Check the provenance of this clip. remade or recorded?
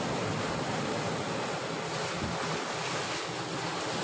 recorded